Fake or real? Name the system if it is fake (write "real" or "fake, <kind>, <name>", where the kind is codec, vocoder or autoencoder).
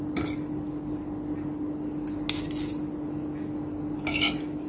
real